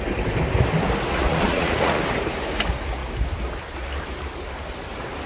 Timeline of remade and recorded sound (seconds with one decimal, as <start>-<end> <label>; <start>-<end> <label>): 0.0-1.1 recorded; 1.1-2.0 remade; 2.0-5.3 recorded